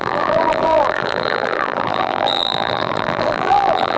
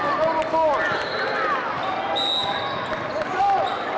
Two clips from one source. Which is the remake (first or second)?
first